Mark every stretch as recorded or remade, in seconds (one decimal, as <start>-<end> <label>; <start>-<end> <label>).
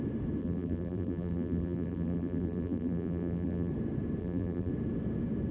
0.0-0.4 recorded; 0.4-3.7 remade; 3.7-4.2 recorded; 4.2-4.7 remade; 4.7-5.5 recorded